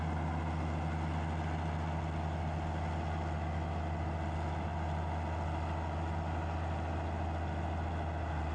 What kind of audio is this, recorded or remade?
recorded